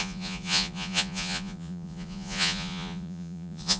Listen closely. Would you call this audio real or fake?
fake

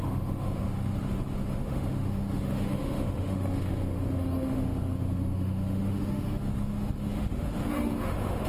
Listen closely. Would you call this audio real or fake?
fake